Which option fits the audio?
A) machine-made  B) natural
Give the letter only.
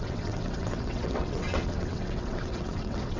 A